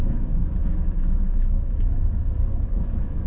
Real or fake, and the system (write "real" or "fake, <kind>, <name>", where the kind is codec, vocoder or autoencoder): fake, codec, DAC